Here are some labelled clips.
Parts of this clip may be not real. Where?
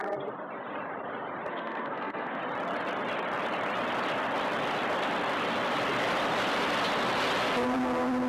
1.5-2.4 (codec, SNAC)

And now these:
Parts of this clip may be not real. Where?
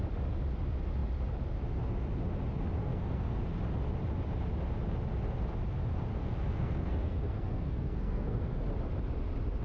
2.8-3.4 (codec, SNAC); 6.1-8.6